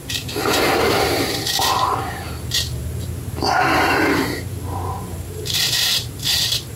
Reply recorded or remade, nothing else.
remade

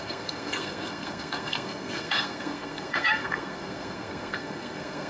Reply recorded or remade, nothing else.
remade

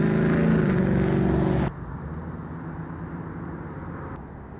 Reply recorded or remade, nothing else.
recorded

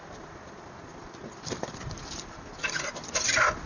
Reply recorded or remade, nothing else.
remade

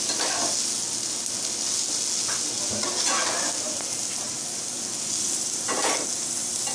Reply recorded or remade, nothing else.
recorded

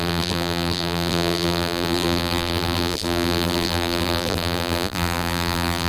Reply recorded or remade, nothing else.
remade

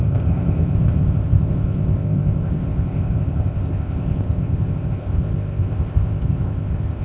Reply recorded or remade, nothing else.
remade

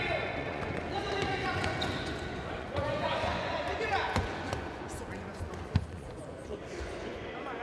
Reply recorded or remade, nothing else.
remade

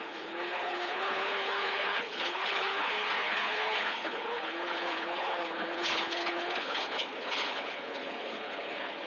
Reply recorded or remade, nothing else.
remade